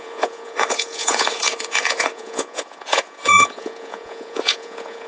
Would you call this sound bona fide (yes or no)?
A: no